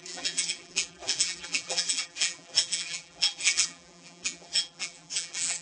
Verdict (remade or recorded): remade